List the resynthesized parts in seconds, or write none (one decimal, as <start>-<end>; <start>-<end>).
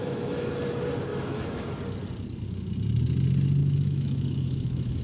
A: 0.0-0.5; 1.1-1.7; 3.6-5.0